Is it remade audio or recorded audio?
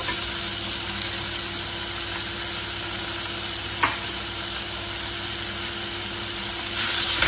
recorded